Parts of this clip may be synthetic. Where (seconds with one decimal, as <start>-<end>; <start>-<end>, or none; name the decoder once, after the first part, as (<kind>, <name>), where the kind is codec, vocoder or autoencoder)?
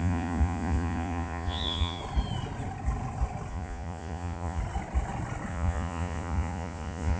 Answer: 0.0-2.0 (vocoder, Vocos); 3.5-4.6; 5.5-7.2